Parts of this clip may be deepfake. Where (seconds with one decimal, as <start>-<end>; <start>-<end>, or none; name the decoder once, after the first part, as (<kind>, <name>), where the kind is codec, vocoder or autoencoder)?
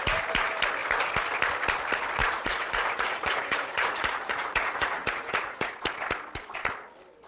2.2-5.7 (vocoder, Vocos)